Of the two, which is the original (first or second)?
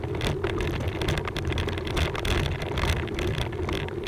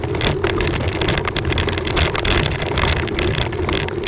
first